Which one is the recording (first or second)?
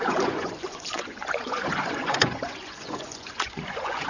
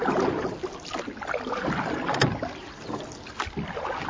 second